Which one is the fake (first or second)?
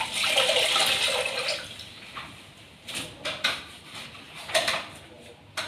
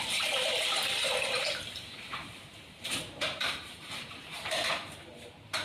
second